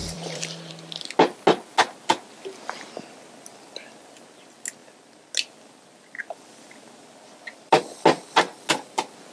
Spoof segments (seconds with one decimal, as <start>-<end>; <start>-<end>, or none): 0.0-0.7